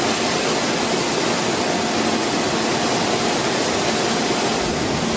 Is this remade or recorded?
recorded